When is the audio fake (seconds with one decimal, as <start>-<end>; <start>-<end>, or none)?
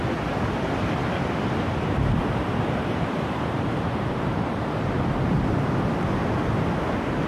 1.0-5.4